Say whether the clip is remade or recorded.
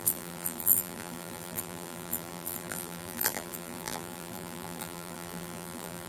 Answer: remade